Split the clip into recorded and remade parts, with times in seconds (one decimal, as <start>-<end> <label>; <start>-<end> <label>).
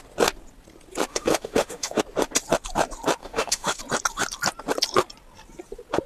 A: 0.0-1.1 recorded; 1.1-2.0 remade; 2.0-3.2 recorded; 3.2-3.8 remade; 3.8-6.1 recorded